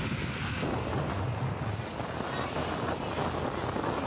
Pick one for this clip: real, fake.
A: real